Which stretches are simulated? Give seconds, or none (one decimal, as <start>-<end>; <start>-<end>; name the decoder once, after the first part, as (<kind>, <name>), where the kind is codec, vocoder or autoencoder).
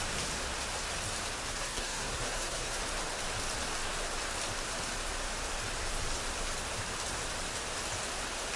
1.6-2.8 (codec, SNAC)